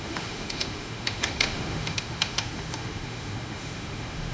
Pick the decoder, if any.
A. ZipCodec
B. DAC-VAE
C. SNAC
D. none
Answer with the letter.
B